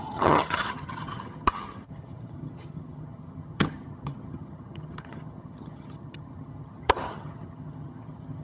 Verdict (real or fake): fake